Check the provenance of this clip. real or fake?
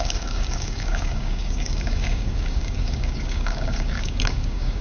fake